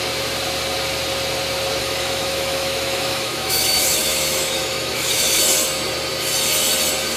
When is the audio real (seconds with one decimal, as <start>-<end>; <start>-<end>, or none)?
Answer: 0.0-1.8; 5.4-7.2